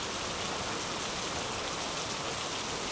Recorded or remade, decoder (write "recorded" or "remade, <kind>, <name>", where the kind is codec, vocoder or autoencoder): recorded